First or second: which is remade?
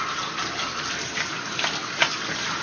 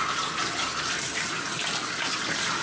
second